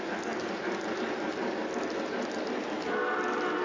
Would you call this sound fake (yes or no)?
no